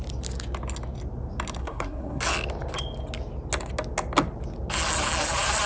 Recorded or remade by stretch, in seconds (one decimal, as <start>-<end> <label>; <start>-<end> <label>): 0.0-1.6 recorded; 1.6-2.2 remade; 2.2-5.7 recorded